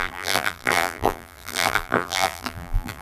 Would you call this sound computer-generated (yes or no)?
yes